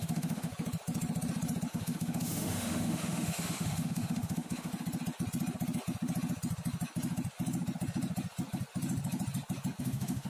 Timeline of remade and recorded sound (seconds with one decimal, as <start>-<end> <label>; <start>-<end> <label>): 0.0-0.5 remade; 0.5-1.7 recorded; 1.7-4.7 remade; 4.7-9.8 recorded; 9.8-10.3 remade